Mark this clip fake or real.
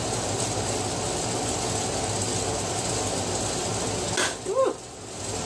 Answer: real